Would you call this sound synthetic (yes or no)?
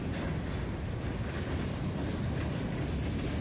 no